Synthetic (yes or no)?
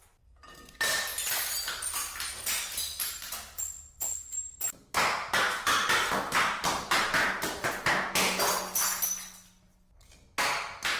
no